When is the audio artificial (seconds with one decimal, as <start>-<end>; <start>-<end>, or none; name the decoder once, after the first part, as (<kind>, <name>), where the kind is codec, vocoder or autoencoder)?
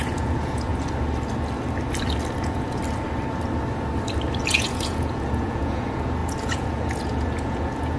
0.0-0.7 (vocoder, Vocos); 2.4-2.8; 4.5-8.0